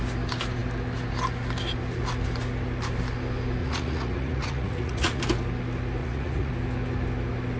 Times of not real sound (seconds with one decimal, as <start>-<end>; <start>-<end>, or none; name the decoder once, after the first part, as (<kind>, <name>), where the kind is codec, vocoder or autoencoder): 3.6-5.2 (vocoder, Vocos); 6.0-6.5